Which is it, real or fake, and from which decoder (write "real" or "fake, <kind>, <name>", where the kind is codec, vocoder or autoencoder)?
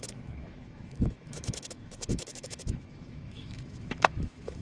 fake, autoencoder, DAC-VAE